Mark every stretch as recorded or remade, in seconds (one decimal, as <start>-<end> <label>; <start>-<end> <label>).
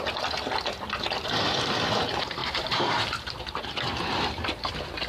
0.0-2.4 recorded; 2.4-3.0 remade; 3.0-5.1 recorded